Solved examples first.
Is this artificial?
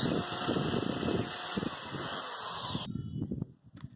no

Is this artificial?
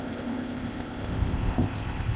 yes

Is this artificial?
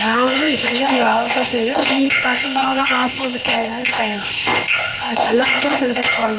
yes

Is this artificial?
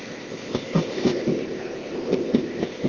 yes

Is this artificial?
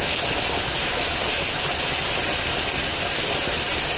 no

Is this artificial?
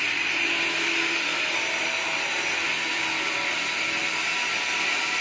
no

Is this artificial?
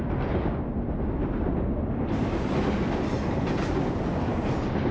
no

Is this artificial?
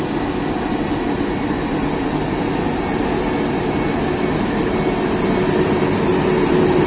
no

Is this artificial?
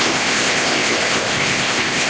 yes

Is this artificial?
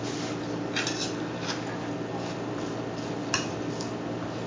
no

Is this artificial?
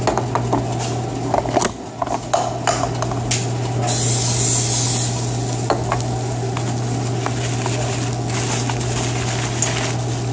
no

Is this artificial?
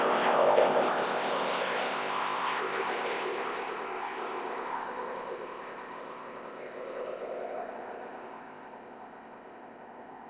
yes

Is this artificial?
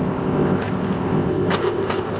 yes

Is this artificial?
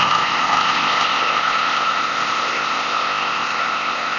yes